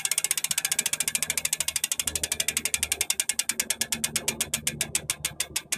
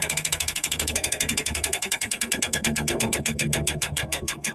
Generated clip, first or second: second